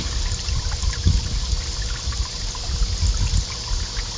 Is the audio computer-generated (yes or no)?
no